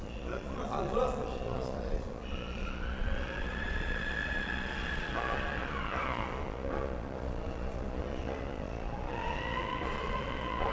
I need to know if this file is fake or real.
fake